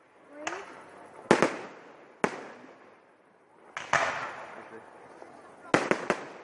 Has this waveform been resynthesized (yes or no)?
no